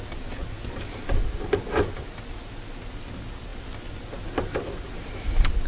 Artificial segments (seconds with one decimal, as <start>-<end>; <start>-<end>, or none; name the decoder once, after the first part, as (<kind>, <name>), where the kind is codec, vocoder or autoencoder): none

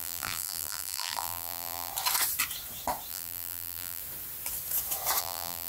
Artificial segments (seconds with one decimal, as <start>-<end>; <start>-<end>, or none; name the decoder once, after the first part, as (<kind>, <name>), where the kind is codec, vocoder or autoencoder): 0.0-1.9 (vocoder, BigVGAN v2); 3.1-4.0; 5.2-5.7